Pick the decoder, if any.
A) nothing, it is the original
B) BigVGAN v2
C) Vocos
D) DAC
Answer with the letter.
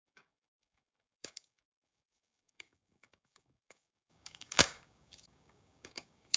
D